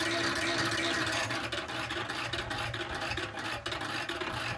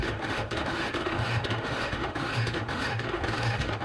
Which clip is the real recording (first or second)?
first